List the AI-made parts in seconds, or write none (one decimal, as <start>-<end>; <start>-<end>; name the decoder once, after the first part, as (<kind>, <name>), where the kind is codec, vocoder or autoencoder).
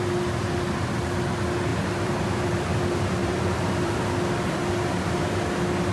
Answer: 1.7-2.8 (vocoder, BigVGAN v2); 3.2-4.1